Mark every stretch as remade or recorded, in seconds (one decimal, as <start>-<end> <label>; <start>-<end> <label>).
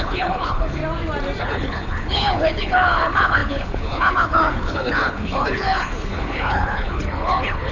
0.0-0.8 remade; 0.8-1.4 recorded; 1.4-7.7 remade